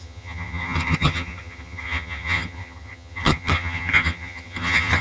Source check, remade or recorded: remade